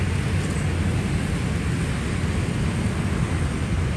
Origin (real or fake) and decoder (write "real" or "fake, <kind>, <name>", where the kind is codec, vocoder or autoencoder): real